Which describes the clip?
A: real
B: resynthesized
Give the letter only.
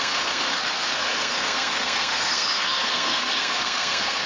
B